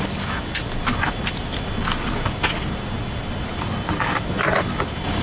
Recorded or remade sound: recorded